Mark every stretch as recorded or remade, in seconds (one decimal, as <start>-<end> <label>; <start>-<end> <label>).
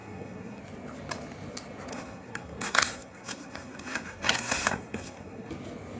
0.0-0.6 remade; 0.6-1.9 recorded; 1.9-5.5 remade; 5.5-6.0 recorded